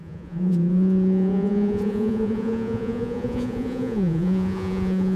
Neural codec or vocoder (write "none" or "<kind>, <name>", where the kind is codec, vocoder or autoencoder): vocoder, Vocos